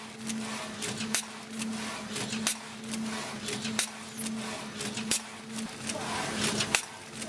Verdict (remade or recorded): recorded